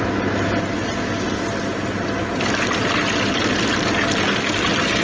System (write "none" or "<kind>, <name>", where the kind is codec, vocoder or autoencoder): none